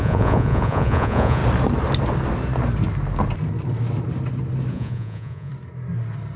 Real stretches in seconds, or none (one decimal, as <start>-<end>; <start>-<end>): 1.4-4.7; 5.5-6.4